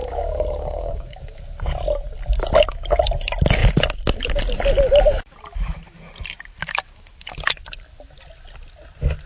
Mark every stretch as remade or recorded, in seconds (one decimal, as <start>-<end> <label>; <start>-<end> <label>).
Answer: 0.0-1.4 remade; 1.4-9.3 recorded